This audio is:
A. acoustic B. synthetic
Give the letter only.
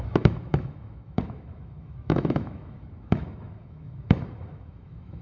B